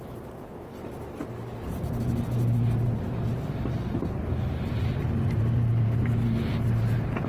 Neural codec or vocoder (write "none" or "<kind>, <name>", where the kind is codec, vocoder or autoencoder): none